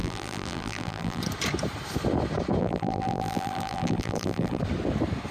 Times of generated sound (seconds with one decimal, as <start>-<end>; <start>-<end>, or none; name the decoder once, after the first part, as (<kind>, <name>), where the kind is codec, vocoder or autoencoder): 0.0-1.2 (vocoder, BigVGAN v2); 2.6-4.6